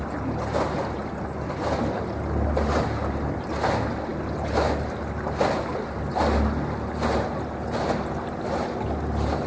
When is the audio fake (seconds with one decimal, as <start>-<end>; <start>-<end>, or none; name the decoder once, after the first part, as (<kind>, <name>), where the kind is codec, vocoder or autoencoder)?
none